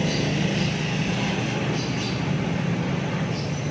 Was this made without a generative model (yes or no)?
yes